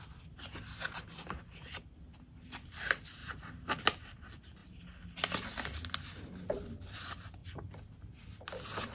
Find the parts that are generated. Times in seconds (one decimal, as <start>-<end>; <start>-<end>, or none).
none